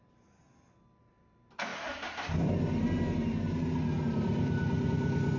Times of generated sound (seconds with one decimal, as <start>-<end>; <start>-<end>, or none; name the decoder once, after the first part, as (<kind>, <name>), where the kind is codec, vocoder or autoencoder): none